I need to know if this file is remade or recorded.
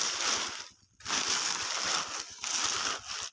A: recorded